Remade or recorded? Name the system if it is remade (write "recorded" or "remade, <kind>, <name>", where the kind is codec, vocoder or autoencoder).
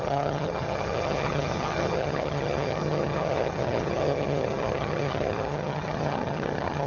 remade, vocoder, HiFi-GAN